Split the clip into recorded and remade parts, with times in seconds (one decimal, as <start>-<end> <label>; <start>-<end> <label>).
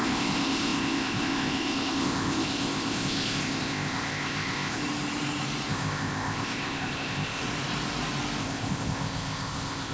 0.0-4.8 remade; 4.8-5.7 recorded; 5.7-7.4 remade; 7.4-8.4 recorded; 8.4-9.9 remade